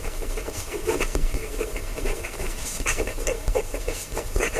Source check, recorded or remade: remade